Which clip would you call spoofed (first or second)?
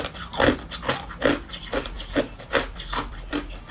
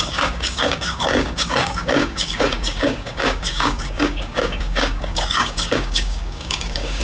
second